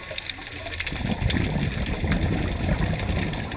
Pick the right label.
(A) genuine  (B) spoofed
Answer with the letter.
A